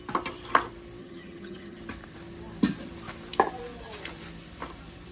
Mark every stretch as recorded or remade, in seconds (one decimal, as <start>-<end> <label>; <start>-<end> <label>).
0.0-1.0 recorded; 1.0-1.8 remade; 1.8-5.1 recorded